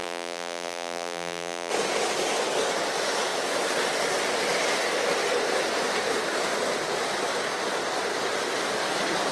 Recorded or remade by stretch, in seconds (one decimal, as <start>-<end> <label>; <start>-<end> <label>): 0.0-1.7 remade; 1.7-9.3 recorded